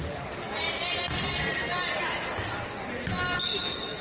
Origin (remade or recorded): recorded